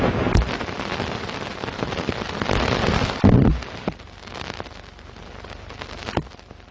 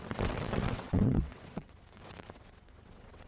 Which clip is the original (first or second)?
first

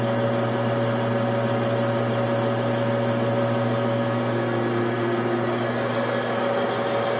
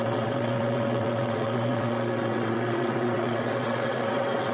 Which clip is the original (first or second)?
first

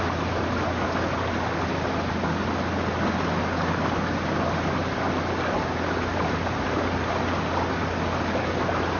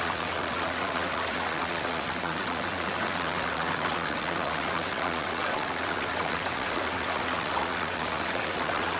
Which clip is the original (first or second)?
first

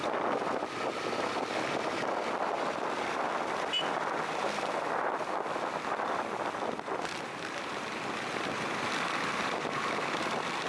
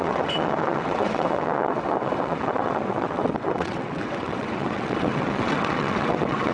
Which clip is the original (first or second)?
first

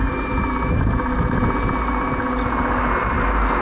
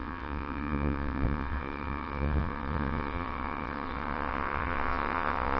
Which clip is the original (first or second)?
first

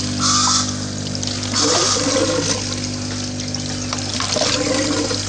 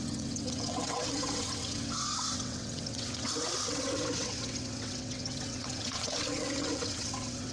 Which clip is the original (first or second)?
first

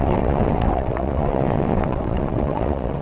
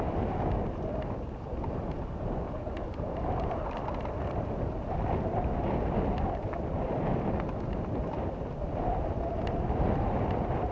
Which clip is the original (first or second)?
second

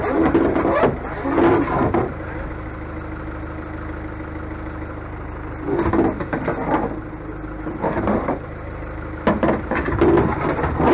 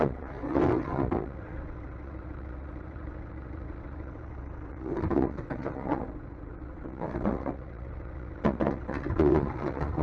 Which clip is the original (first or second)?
first